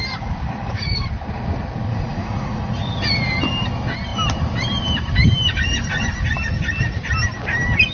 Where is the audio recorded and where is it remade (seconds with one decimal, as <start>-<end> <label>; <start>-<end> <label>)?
0.0-0.6 recorded; 0.6-1.1 remade; 1.1-1.9 recorded; 1.9-2.7 remade; 2.7-7.9 recorded